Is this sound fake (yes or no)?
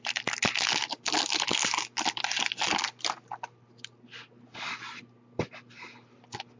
no